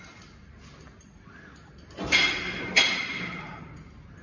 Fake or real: real